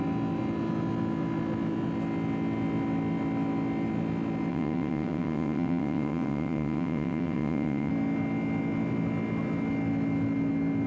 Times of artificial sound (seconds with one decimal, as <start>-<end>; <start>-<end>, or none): 4.5-7.9